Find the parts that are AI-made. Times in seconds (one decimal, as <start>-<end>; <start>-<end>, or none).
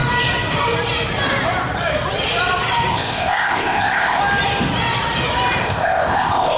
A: 2.9-4.2; 5.6-6.6